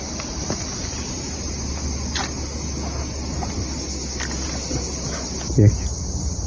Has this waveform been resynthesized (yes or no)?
no